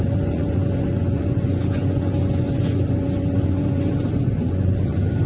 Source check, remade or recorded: remade